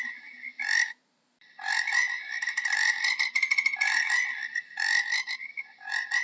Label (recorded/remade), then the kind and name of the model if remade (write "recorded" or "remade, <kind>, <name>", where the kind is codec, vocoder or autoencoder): recorded